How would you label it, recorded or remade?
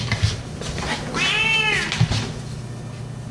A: recorded